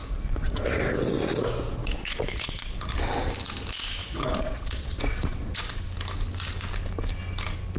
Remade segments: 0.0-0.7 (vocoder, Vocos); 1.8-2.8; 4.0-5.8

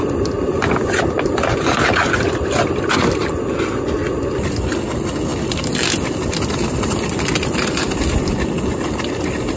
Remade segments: none

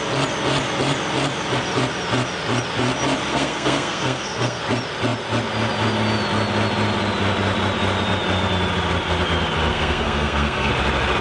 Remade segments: 3.3-4.6 (codec, SNAC); 9.7-10.7

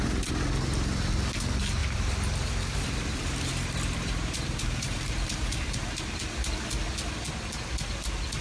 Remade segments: 1.8-6.0 (vocoder, BigVGAN v2)